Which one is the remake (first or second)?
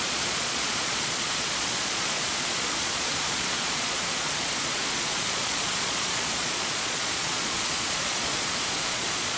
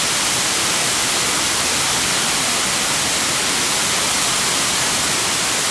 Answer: first